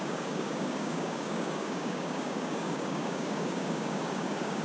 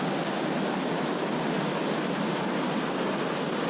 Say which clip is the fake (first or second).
first